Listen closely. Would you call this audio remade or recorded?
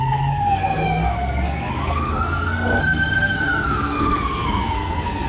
remade